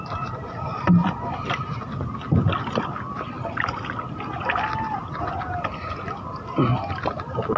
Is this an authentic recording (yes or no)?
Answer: yes